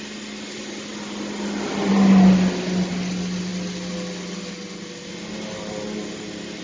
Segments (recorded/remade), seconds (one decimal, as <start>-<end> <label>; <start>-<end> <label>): 0.0-6.6 recorded